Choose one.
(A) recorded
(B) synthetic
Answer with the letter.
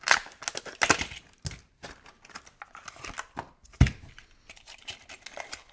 A